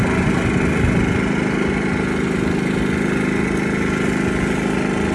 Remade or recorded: recorded